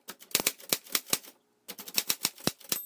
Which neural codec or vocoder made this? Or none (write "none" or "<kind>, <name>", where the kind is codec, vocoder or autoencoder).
none